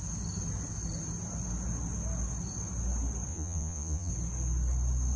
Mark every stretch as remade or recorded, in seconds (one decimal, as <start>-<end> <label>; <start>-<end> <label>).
0.0-3.3 recorded; 3.3-4.1 remade; 4.1-5.2 recorded